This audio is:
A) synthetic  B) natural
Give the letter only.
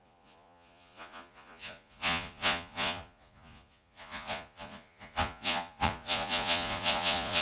A